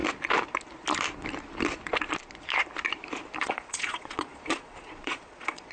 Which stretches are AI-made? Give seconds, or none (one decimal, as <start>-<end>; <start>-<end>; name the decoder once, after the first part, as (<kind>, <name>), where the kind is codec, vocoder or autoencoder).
3.4-5.7 (vocoder, Vocos)